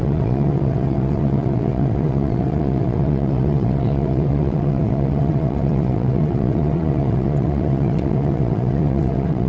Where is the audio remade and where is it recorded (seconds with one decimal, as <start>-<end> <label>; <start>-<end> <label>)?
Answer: 0.0-9.5 remade